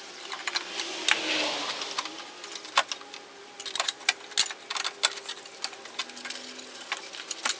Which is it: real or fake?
real